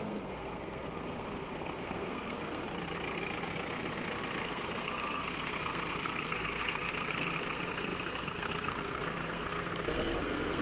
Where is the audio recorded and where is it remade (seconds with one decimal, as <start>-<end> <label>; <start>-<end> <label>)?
0.0-2.6 remade; 2.6-4.4 recorded; 4.4-10.6 remade